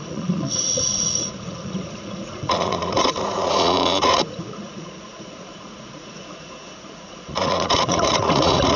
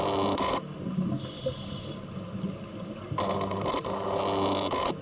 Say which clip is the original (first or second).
second